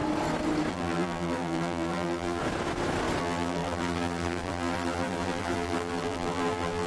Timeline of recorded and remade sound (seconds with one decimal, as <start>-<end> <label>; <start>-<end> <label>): 0.0-0.7 recorded; 0.7-2.4 remade; 2.4-3.2 recorded; 3.2-6.9 remade